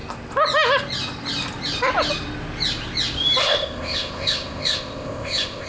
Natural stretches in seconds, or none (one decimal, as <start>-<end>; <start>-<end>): 0.0-3.4